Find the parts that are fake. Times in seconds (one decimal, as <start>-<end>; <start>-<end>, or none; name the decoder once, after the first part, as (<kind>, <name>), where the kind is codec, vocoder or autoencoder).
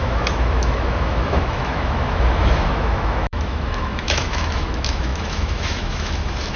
0.0-6.6 (autoencoder, DAC-VAE)